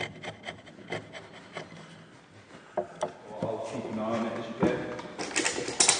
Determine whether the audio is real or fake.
real